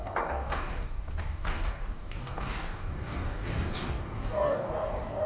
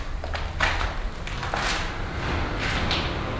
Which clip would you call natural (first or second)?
second